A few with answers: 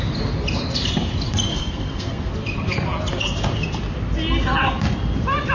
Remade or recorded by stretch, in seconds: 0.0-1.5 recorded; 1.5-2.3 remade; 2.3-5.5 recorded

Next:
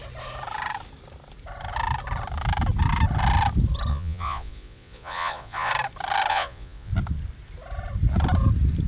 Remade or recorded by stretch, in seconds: 0.0-3.9 recorded; 3.9-5.7 remade; 5.7-6.3 recorded; 6.3-6.9 remade; 6.9-8.9 recorded

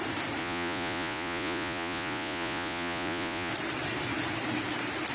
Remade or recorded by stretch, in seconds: 0.0-0.4 recorded; 0.4-3.5 remade; 3.5-5.1 recorded

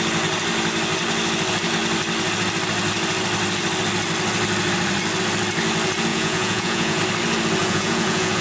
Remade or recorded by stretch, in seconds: 0.0-6.1 recorded; 6.1-7.0 remade; 7.0-7.6 recorded; 7.6-8.4 remade

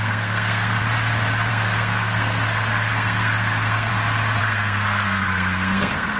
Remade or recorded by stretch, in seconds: 0.0-0.8 remade; 0.8-1.5 recorded; 1.5-3.9 remade; 3.9-4.4 recorded; 4.4-6.2 remade

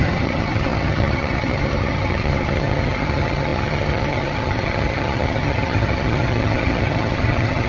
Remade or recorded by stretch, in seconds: 0.0-7.7 remade

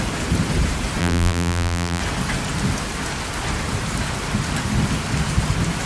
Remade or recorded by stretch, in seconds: 0.0-1.0 recorded; 1.0-2.0 remade; 2.0-5.9 recorded

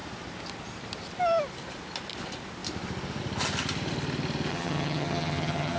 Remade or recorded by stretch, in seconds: 0.0-4.5 recorded; 4.5-5.8 remade